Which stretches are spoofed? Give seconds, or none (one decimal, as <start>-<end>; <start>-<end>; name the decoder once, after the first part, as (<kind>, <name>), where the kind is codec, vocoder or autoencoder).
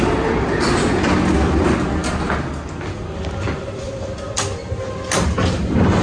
none